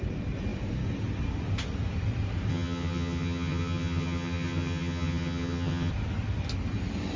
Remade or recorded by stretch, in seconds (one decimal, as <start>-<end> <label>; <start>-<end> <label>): 0.0-2.5 recorded; 2.5-5.9 remade; 5.9-7.2 recorded